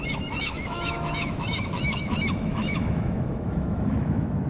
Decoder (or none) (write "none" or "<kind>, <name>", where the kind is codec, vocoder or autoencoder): autoencoder, DAC-VAE